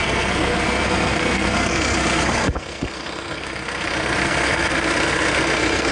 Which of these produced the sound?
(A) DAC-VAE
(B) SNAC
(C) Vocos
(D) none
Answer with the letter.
B